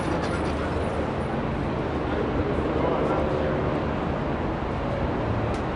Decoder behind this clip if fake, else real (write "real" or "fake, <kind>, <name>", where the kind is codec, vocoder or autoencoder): real